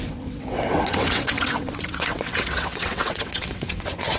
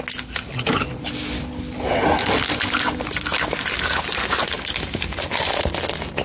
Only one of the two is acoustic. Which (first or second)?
second